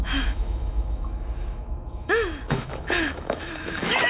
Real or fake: fake